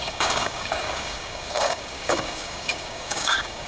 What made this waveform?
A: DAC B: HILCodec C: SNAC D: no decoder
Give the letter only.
A